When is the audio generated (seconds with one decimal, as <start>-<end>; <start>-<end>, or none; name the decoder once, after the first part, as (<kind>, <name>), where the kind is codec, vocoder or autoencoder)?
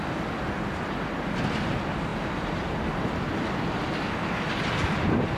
none